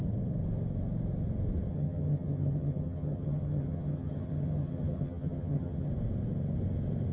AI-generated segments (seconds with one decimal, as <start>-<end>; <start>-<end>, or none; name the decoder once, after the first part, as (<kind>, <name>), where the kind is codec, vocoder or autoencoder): 1.7-5.9 (vocoder, HiFi-GAN)